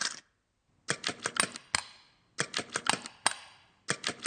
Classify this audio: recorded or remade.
recorded